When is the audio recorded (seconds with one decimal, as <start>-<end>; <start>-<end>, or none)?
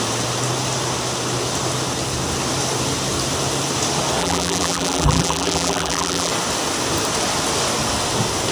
0.0-4.2; 6.3-8.5